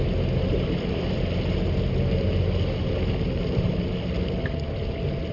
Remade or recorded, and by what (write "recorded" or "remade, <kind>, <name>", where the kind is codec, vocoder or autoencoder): recorded